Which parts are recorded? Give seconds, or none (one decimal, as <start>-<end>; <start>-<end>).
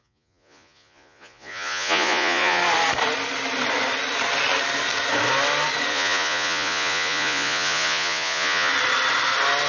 2.6-5.9; 8.7-9.7